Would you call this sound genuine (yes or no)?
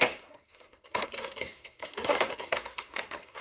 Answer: no